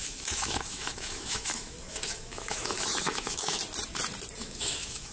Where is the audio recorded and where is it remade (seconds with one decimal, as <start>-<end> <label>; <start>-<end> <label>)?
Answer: 0.0-3.6 remade; 3.6-4.4 recorded; 4.4-5.1 remade